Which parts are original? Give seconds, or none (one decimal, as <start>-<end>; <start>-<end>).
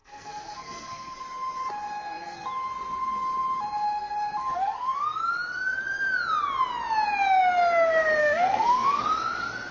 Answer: 1.2-4.4; 5.2-8.2; 9.0-9.7